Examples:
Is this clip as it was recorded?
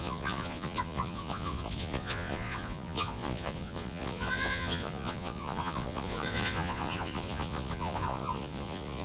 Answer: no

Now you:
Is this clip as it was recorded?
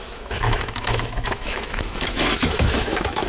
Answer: no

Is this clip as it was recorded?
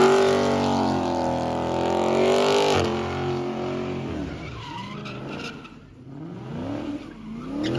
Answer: yes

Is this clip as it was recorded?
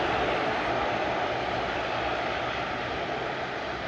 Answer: yes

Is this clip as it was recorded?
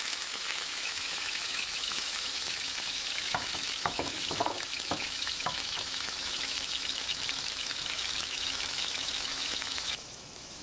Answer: no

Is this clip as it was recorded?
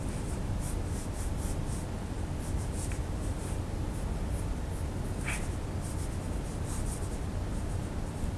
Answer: yes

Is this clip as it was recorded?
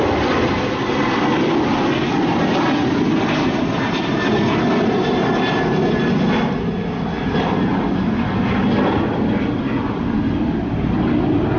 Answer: yes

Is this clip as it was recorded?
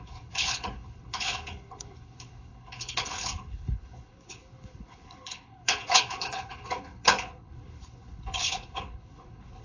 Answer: no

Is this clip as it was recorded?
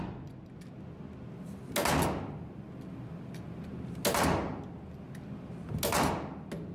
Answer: yes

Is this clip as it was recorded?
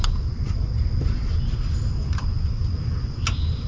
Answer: yes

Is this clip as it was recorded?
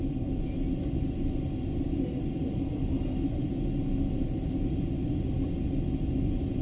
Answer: yes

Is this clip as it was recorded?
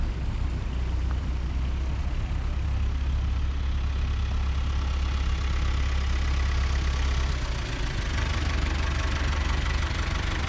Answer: yes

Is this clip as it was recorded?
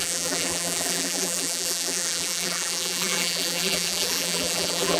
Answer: no